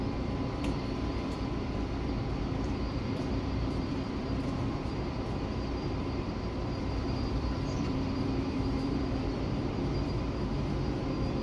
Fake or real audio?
fake